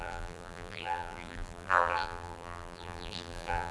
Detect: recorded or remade remade